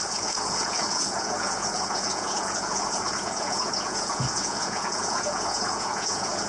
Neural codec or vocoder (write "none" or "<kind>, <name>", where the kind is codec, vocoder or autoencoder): vocoder, Vocos